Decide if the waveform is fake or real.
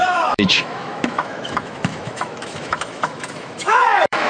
fake